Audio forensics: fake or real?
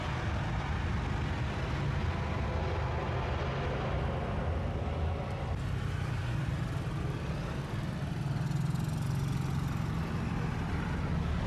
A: real